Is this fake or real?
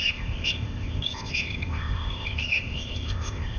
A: fake